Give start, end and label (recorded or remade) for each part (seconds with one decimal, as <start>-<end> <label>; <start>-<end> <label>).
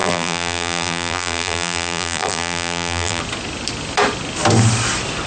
0.0-3.2 remade; 3.2-5.3 recorded